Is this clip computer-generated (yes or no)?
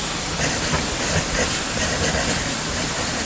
no